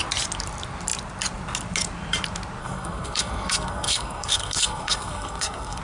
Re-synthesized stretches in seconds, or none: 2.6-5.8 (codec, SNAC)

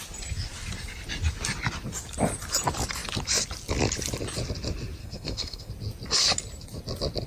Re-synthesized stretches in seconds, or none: 5.0-5.7 (codec, SNAC)

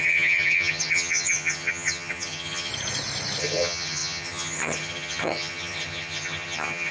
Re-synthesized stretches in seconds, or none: 0.0-2.7 (vocoder, HiFi-GAN); 3.4-6.9